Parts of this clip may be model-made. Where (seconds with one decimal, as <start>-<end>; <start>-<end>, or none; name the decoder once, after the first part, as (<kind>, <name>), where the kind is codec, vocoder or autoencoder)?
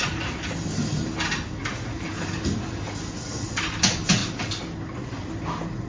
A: none